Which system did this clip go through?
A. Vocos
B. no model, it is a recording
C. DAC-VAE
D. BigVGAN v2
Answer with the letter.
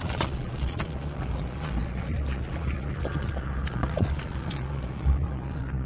A